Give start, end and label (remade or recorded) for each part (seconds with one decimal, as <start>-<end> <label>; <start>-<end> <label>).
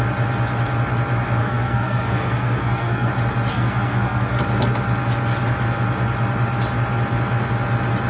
0.0-1.4 recorded; 1.4-3.1 remade; 3.1-3.5 recorded; 3.5-4.4 remade; 4.4-8.1 recorded